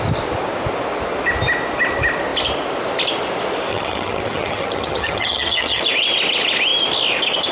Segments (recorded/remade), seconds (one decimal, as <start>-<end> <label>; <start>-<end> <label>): 0.0-3.7 recorded; 3.7-5.8 remade; 5.8-7.5 recorded